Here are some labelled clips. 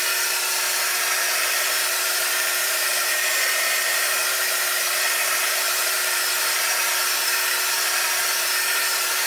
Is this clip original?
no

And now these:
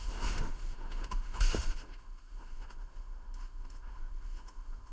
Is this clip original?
no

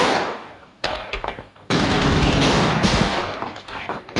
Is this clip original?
no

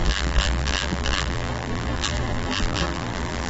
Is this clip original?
no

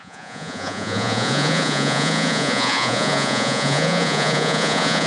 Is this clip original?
no